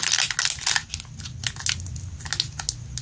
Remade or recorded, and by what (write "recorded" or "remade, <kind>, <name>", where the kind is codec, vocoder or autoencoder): recorded